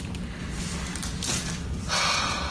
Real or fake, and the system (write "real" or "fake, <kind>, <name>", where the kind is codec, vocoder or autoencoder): real